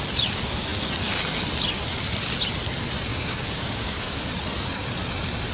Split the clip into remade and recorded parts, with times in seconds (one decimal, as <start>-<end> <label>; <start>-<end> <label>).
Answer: 0.0-3.1 recorded; 3.1-4.1 remade; 4.1-5.5 recorded